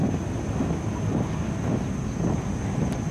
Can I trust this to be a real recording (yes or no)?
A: yes